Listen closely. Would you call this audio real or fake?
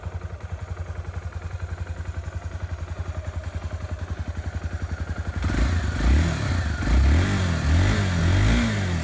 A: real